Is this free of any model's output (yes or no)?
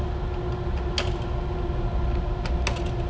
yes